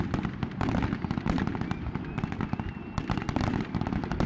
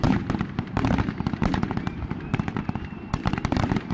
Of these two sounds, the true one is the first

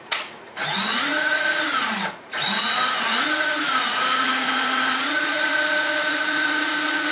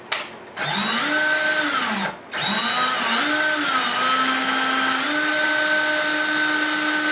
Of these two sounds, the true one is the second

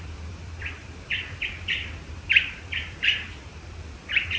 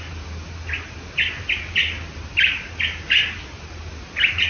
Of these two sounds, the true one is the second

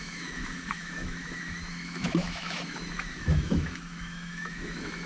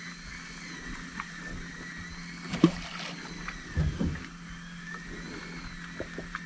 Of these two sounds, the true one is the second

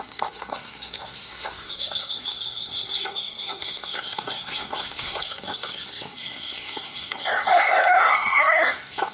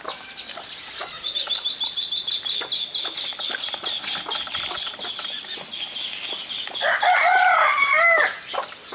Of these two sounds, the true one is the second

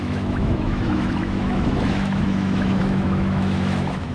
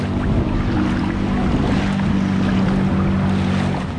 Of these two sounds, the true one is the second